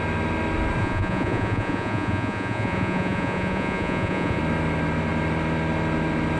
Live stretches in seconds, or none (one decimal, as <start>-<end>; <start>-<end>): 0.0-0.8; 4.4-6.4